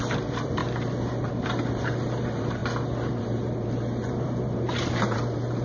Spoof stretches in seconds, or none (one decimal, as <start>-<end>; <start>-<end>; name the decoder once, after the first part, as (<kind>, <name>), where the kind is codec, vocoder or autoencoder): 0.0-0.6 (vocoder, BigVGAN v2); 1.3-2.6; 3.2-5.6